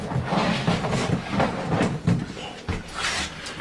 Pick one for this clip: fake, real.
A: real